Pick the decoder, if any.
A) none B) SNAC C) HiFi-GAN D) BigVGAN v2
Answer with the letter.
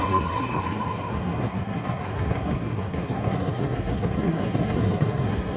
B